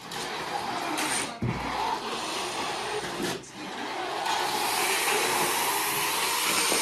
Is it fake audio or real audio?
real